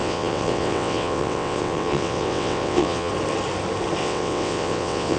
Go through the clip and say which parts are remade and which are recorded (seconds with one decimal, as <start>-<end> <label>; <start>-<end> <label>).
0.0-3.1 remade; 3.1-4.0 recorded; 4.0-5.2 remade